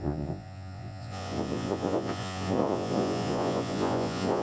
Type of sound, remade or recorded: remade